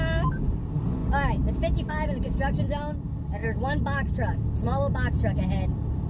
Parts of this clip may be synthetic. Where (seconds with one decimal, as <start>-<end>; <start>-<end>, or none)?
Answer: none